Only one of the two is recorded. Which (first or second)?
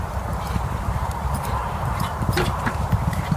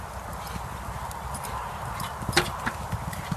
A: second